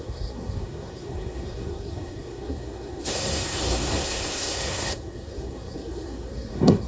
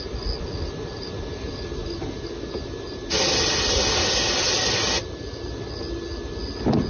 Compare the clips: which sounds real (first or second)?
second